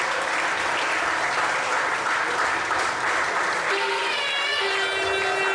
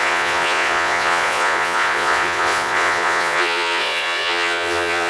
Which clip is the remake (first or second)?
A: second